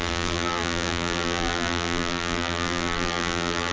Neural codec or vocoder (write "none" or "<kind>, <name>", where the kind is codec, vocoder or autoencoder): vocoder, BigVGAN v2